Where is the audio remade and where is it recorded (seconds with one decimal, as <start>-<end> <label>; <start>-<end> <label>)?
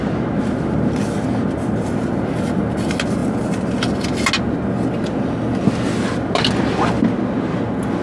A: 0.0-8.0 recorded